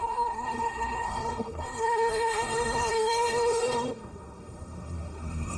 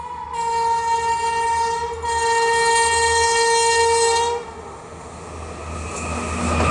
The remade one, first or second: first